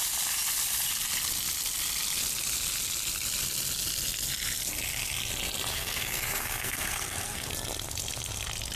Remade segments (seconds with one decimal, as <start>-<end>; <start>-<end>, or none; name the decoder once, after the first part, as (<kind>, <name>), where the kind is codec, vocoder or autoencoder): 5.7-7.5 (codec, SNAC)